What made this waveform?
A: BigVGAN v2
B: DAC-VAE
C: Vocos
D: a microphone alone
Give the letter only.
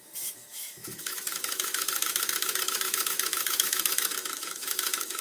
B